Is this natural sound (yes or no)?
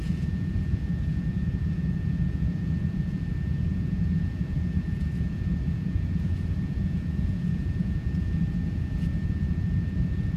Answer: no